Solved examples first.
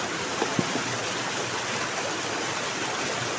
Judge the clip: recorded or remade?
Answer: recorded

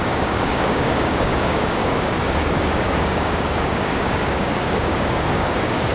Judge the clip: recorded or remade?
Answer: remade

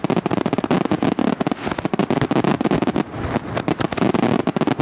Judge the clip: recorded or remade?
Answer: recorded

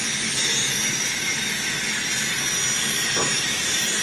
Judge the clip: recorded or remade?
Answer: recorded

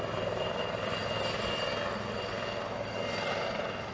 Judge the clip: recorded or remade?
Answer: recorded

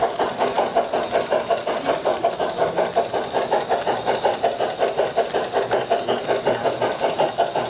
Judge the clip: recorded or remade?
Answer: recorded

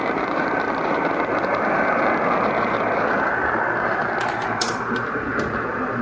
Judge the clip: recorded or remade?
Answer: remade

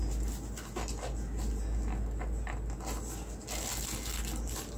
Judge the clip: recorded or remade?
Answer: recorded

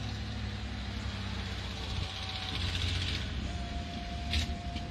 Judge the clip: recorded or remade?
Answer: recorded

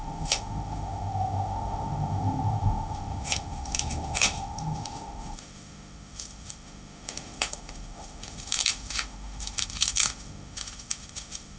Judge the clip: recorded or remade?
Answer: remade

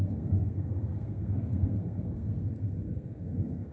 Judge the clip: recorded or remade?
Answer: remade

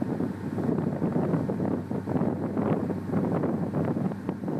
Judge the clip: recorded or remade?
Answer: recorded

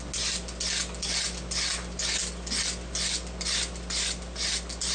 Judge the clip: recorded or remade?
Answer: recorded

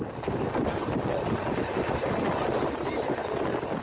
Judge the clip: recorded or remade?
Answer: recorded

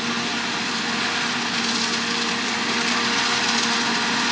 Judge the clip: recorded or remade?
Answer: recorded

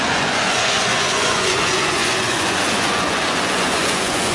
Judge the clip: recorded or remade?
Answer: remade